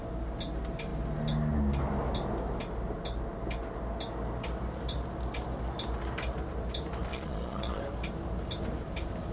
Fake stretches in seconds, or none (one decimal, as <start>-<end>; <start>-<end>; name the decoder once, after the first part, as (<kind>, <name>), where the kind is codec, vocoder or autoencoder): 7.1-7.8 (vocoder, Vocos)